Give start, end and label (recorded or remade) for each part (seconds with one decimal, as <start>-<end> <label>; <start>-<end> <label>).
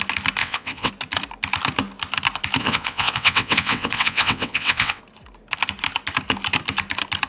0.0-0.4 recorded; 0.4-0.9 remade; 0.9-2.6 recorded; 2.6-5.0 remade; 5.0-7.3 recorded